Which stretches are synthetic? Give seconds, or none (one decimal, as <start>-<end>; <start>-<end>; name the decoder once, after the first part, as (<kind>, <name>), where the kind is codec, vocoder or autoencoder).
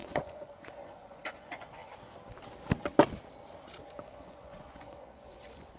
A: 0.0-1.8 (vocoder, Vocos); 3.8-5.8